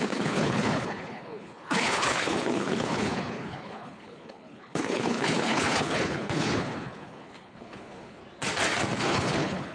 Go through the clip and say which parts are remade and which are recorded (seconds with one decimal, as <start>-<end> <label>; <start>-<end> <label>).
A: 0.0-8.2 remade; 8.2-9.0 recorded; 9.0-9.7 remade